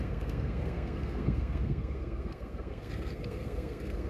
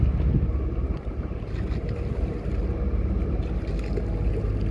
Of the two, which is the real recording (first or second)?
second